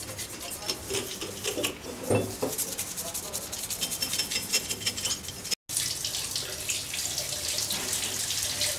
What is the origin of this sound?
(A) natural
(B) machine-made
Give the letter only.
A